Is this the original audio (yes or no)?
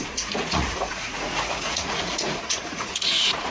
no